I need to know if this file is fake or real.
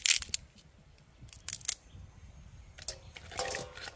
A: real